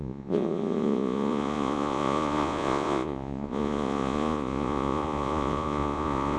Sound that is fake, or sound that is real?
fake